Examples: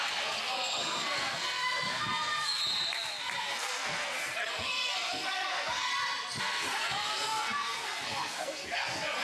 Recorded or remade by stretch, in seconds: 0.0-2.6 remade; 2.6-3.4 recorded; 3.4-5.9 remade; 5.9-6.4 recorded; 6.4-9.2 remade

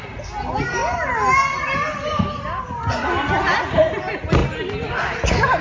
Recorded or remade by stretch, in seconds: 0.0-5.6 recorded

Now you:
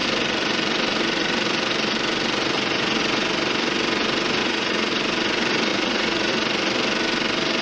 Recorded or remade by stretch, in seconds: 0.0-4.4 recorded; 4.4-4.9 remade; 4.9-5.7 recorded; 5.7-6.3 remade; 6.3-7.6 recorded

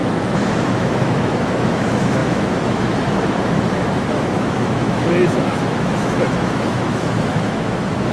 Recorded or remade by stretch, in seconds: 0.0-8.1 remade

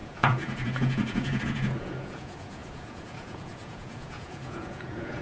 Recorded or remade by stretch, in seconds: 0.0-5.2 remade

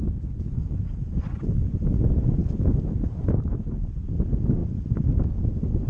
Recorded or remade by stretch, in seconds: 0.0-5.9 recorded